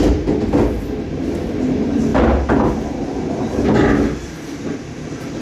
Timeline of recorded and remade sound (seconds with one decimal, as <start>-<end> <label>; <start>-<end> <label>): 0.0-5.4 recorded

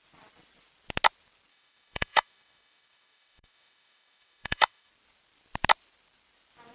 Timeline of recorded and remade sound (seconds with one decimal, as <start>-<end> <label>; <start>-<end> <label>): 0.0-1.5 recorded; 1.5-4.9 remade; 4.9-6.7 recorded